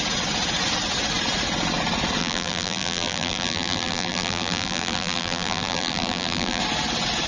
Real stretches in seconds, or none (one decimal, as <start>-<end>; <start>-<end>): 0.0-2.2; 6.6-7.3